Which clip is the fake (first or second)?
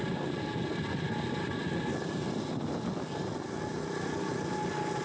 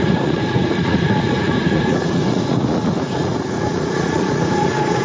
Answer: second